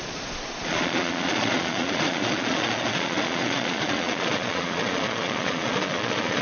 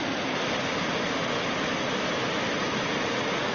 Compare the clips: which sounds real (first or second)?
second